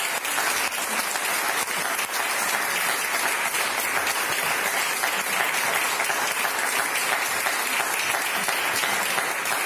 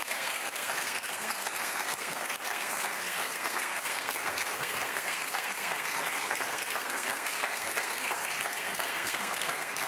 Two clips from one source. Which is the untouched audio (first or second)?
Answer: first